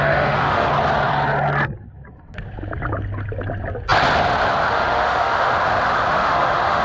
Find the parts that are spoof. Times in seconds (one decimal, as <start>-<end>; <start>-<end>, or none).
0.0-0.7; 4.7-5.5; 6.2-6.8